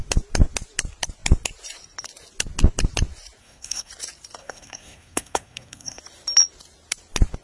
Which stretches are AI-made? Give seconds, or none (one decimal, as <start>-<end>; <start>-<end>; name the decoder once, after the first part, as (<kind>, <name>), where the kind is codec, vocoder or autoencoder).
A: 3.4-3.9 (codec, SNAC); 4.4-6.0